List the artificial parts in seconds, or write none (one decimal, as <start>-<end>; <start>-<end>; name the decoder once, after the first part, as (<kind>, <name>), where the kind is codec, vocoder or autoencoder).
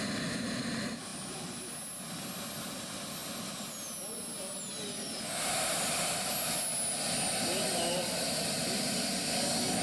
none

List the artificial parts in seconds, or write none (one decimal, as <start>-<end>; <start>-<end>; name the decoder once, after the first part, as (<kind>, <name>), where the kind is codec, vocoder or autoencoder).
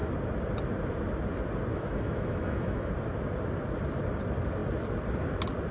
1.7-2.9 (autoencoder, DAC-VAE)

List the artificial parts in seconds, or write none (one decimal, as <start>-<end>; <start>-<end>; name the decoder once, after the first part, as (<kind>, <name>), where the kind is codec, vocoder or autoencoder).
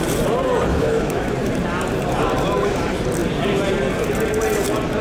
0.7-1.3 (autoencoder, DAC-VAE)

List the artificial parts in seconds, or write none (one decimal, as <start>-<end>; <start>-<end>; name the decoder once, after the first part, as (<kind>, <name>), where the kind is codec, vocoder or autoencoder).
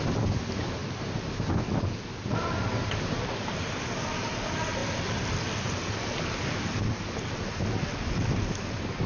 none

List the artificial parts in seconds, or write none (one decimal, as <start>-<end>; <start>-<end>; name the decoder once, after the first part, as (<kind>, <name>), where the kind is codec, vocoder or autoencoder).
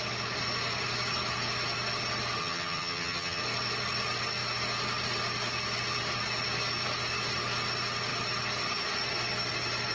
2.4-3.4 (vocoder, HiFi-GAN)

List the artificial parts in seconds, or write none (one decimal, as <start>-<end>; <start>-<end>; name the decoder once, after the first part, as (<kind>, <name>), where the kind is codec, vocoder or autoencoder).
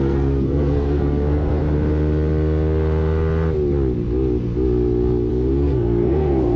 0.0-1.6 (codec, SNAC); 5.3-6.6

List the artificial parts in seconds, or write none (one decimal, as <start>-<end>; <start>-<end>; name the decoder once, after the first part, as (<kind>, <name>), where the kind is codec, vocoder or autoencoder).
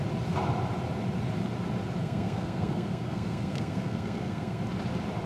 2.0-4.6 (codec, SNAC)